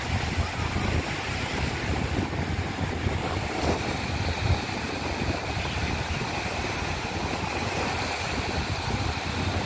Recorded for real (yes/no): yes